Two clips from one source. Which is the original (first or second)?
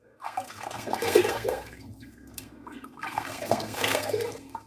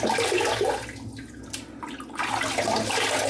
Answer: second